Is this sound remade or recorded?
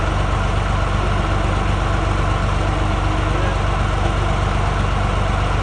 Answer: recorded